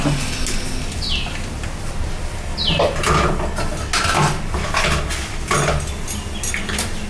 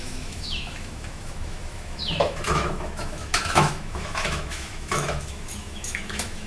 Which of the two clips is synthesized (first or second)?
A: second